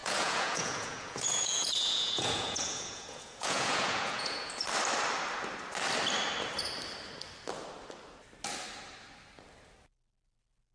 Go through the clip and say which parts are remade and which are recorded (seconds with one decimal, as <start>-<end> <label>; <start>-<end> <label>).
0.0-4.5 remade; 4.5-10.7 recorded